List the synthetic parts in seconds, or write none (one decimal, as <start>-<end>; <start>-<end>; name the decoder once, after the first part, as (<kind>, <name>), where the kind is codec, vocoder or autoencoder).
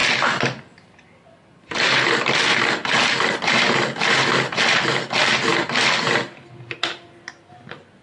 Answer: none